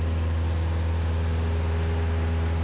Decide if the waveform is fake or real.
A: real